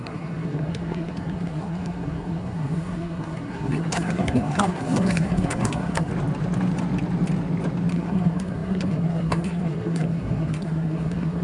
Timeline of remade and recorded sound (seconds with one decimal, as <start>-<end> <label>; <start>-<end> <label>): 0.0-6.1 remade; 6.1-7.9 recorded; 7.9-11.4 remade